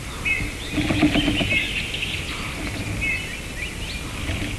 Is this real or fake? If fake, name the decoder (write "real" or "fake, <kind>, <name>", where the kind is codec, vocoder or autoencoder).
real